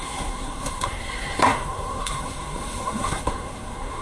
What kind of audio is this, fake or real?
fake